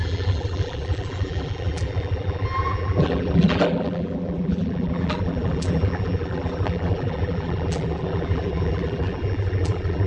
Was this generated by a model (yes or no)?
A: yes